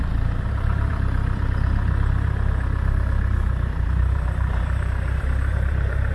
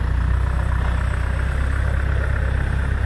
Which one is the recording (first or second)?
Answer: second